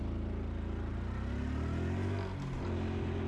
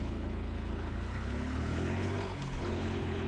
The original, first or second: first